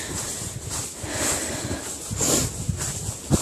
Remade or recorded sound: recorded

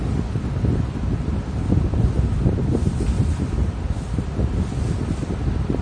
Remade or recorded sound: recorded